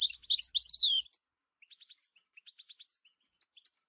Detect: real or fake real